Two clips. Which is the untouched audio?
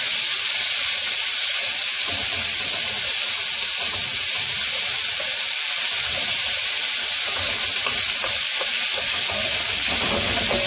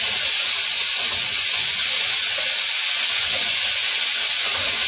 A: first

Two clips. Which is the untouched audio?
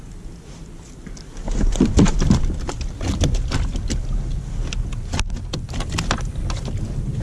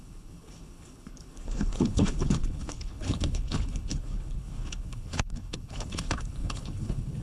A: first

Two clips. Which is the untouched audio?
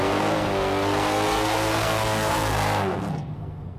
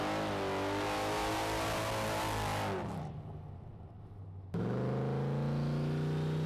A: second